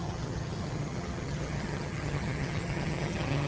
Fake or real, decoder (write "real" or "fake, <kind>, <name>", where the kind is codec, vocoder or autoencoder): fake, vocoder, HiFi-GAN